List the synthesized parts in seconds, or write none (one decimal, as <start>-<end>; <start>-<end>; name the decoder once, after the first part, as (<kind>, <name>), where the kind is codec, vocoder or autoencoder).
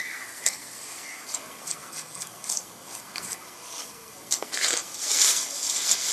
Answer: 0.0-6.1 (codec, SNAC)